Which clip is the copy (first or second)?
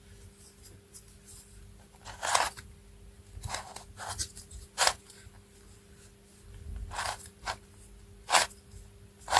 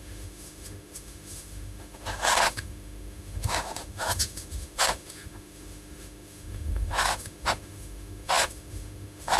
second